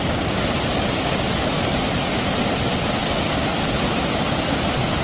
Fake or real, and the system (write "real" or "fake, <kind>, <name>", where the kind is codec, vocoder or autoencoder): real